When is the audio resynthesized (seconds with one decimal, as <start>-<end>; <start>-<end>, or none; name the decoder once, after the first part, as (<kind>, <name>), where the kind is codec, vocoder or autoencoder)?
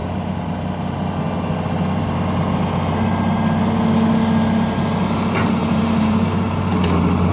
5.6-6.6 (vocoder, BigVGAN v2)